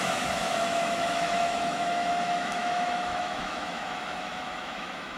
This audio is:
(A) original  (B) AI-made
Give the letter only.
B